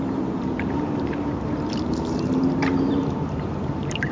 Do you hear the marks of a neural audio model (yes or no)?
yes